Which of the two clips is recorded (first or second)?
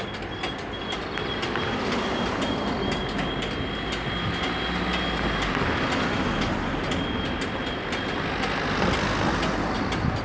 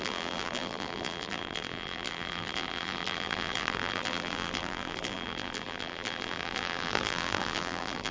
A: first